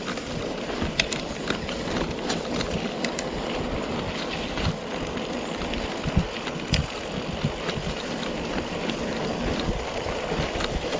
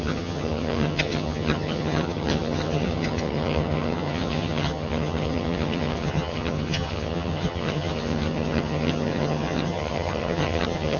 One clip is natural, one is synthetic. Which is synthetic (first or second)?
second